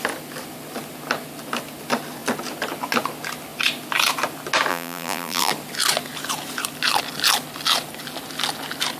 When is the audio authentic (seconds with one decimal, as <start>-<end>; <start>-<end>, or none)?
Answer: 0.0-4.7; 5.5-9.0